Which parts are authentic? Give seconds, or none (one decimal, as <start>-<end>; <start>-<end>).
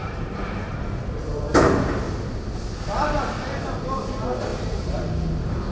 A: 0.8-4.5; 5.0-5.7